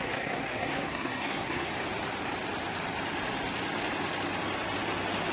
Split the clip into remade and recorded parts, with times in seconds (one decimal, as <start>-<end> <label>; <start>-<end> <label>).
0.0-1.7 remade; 1.7-5.3 recorded

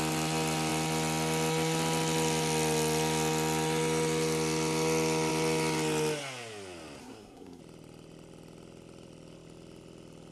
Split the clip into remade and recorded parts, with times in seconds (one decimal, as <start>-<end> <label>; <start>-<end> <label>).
0.0-7.0 recorded; 7.0-7.6 remade; 7.6-10.3 recorded

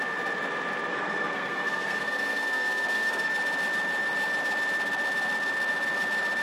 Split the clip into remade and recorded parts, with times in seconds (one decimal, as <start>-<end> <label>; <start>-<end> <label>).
0.0-0.9 recorded; 0.9-3.3 remade; 3.3-6.4 recorded

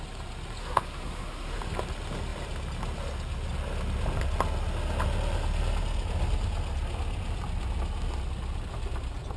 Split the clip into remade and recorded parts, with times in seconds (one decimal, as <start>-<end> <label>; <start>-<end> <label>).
0.0-0.6 recorded; 0.6-1.6 remade; 1.6-9.4 recorded

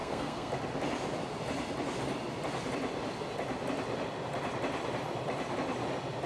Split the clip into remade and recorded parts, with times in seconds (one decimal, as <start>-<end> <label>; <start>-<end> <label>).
0.0-0.5 remade; 0.5-6.3 recorded

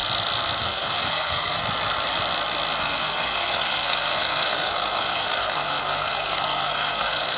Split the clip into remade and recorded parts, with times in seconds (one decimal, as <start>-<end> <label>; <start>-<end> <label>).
0.0-0.6 recorded; 0.6-1.6 remade; 1.6-2.8 recorded; 2.8-7.4 remade